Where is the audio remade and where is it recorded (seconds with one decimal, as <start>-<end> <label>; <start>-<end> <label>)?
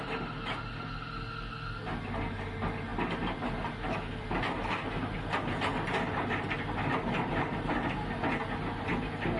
0.0-9.4 recorded